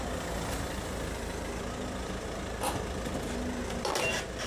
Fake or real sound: real